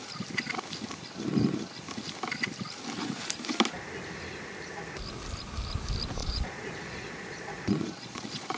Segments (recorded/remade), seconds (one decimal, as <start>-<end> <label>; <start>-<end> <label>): 0.0-6.2 recorded; 6.2-8.6 remade